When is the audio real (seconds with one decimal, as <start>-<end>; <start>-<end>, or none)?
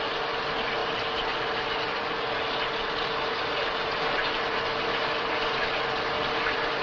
0.0-6.8